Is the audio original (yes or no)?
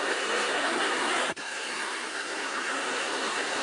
no